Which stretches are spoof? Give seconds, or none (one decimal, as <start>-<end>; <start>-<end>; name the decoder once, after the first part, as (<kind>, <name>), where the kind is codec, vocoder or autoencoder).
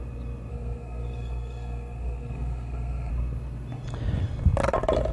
0.5-3.1 (codec, SNAC)